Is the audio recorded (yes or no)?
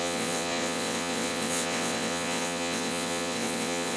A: no